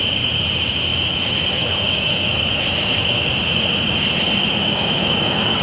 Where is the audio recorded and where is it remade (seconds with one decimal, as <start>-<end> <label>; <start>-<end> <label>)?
0.0-0.9 recorded; 0.9-3.3 remade; 3.3-4.4 recorded; 4.4-5.6 remade